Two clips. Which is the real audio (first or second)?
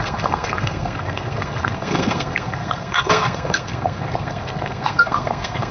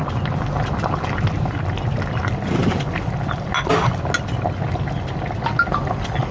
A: second